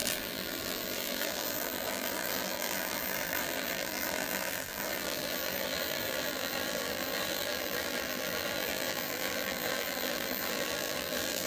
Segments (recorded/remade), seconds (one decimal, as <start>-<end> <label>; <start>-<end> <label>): 0.0-11.5 remade